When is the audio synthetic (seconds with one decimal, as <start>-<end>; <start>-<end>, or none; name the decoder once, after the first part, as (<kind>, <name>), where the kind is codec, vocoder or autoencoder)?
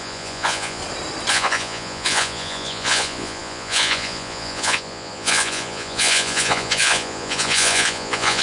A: 0.0-0.8 (vocoder, Vocos); 1.3-8.4